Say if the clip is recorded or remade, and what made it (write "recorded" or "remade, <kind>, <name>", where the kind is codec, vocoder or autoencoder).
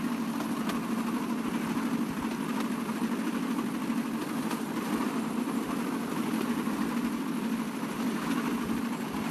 recorded